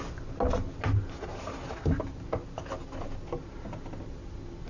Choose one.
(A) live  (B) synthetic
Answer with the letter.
A